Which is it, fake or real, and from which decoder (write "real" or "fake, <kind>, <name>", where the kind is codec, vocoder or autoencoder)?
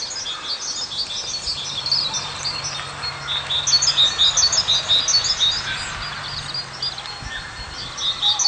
real